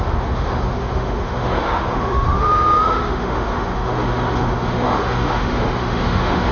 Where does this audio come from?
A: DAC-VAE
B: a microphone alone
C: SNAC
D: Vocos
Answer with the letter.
A